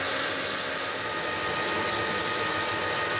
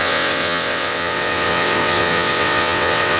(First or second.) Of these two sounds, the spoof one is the second